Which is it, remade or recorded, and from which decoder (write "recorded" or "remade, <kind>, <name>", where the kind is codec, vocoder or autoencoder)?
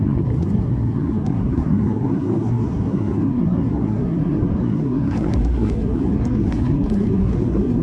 remade, codec, SNAC